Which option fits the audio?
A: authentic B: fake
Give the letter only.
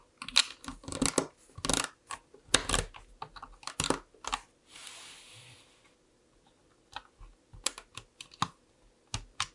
A